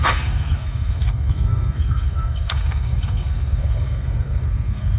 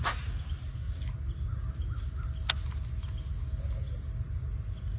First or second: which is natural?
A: second